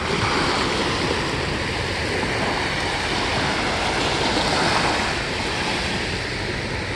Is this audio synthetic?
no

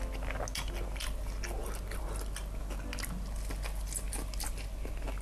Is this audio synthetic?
no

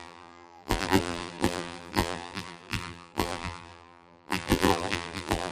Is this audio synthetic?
yes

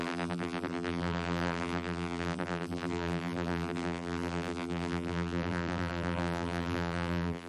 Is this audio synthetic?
yes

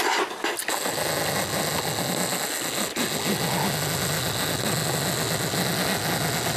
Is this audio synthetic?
no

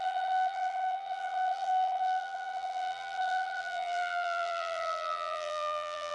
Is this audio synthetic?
yes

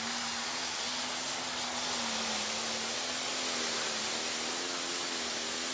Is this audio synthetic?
no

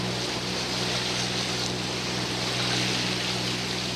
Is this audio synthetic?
no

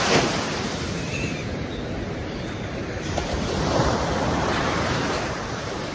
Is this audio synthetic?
yes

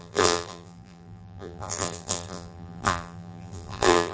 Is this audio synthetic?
yes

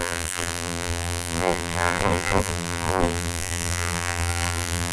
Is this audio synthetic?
yes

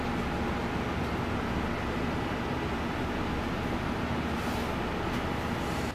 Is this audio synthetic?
no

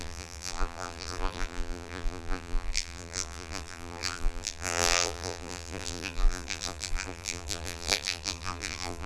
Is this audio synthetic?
yes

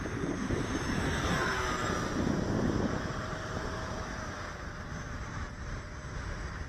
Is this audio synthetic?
yes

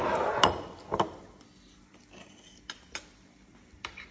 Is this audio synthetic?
yes